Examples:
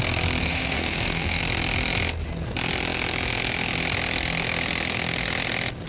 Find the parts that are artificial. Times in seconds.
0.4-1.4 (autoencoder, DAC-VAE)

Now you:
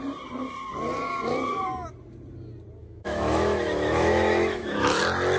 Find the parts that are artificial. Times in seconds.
2.8-5.0 (autoencoder, DAC-VAE)

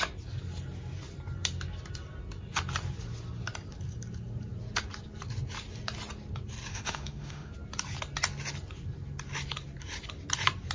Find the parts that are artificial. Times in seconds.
6.7-7.5 (autoencoder, DAC-VAE)

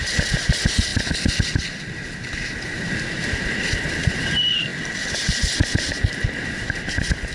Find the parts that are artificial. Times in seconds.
none

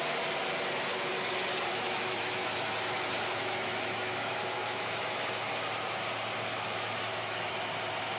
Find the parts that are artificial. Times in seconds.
1.7-5.5 (autoencoder, DAC-VAE); 6.5-7.5